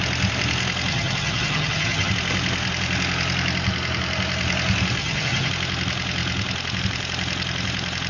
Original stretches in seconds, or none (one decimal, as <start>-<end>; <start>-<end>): 0.0-0.9; 2.1-5.0; 5.5-8.1